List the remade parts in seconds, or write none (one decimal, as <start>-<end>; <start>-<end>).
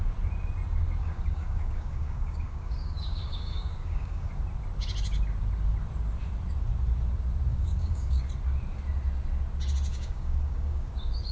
1.0-4.3; 7.5-8.3; 9.9-10.9